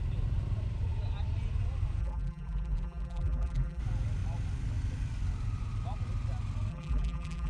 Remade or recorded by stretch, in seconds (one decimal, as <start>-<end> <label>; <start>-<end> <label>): 0.0-2.0 recorded; 2.0-3.8 remade; 3.8-6.7 recorded; 6.7-7.5 remade